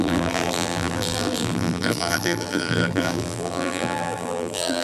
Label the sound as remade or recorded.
remade